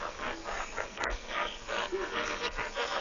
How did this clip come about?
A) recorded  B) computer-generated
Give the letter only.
B